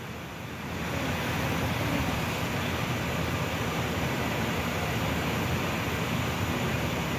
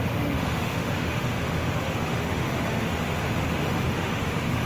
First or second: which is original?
first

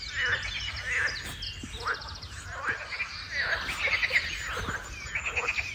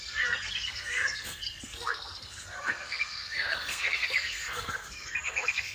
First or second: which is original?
first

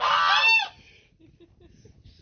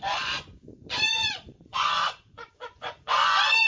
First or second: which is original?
first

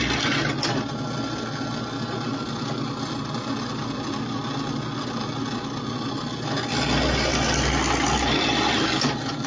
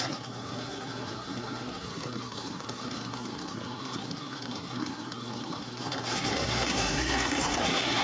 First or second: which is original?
first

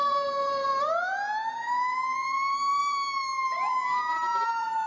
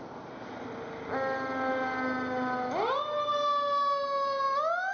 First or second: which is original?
second